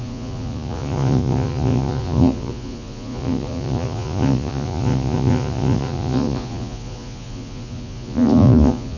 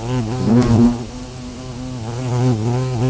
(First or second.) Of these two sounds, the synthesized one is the first